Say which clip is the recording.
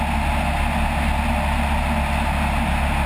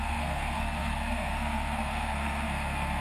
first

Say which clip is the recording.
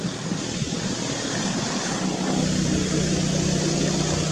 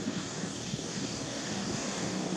first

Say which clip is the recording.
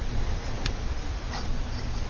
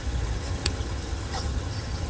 first